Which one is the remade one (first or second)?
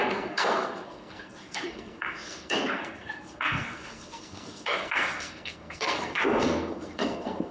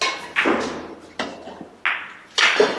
first